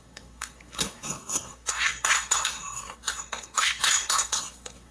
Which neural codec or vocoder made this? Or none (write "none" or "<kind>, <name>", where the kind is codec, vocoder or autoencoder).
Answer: codec, SNAC